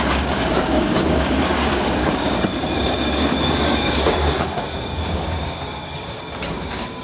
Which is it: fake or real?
fake